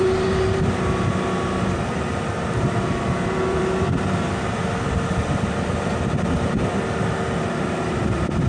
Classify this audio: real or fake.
fake